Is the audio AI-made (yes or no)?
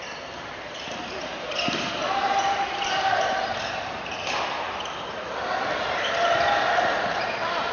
no